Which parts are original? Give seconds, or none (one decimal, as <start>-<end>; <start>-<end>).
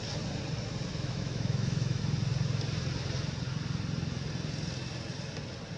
0.0-0.9; 2.0-5.8